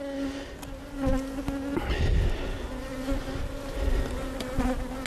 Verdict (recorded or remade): recorded